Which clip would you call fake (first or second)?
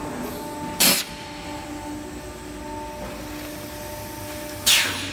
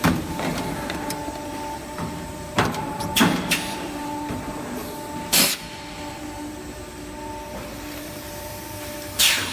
second